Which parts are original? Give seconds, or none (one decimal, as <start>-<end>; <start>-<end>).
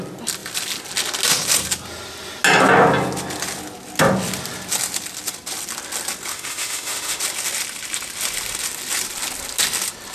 0.0-6.3; 7.2-10.1